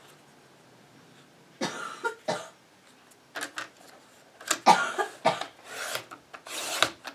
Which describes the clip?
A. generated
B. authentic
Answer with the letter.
B